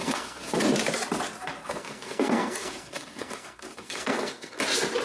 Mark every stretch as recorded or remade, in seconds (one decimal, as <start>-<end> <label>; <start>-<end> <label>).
0.0-0.6 remade; 0.6-1.6 recorded; 1.6-4.6 remade; 4.6-5.0 recorded